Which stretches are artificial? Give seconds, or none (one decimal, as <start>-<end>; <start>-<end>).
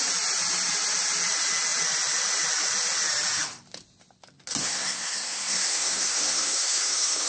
4.6-7.3